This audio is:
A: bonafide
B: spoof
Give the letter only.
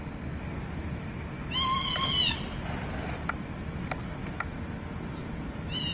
A